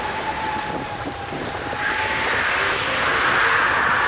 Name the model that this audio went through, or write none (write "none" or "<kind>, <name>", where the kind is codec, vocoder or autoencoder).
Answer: none